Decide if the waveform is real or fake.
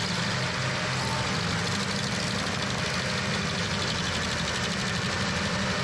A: real